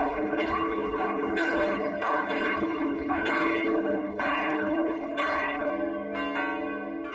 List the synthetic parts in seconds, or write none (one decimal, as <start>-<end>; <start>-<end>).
0.0-5.7